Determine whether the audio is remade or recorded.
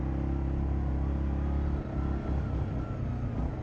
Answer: recorded